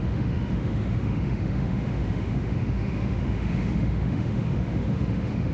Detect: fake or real fake